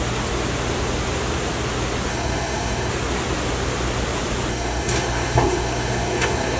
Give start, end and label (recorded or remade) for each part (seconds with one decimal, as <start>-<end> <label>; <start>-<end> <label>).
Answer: 0.0-2.1 recorded; 2.1-2.9 remade; 2.9-4.5 recorded; 4.5-6.6 remade